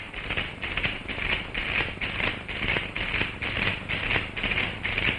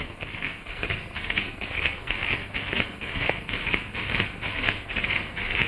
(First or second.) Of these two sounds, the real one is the first